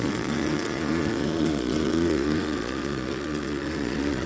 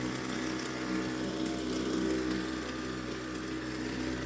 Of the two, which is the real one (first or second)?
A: second